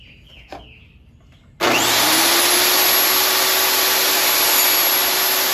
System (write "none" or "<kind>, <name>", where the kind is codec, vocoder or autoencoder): none